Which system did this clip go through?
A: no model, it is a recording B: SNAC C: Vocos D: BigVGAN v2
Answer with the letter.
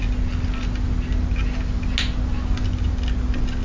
A